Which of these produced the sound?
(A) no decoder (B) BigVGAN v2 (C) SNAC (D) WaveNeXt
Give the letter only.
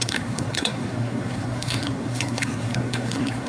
C